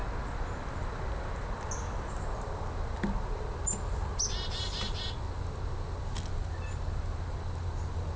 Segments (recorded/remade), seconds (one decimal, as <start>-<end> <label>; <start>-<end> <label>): 0.0-8.2 recorded